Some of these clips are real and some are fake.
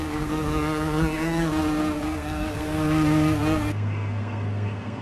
fake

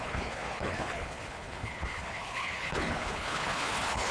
fake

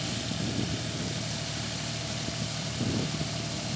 real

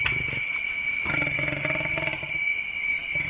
real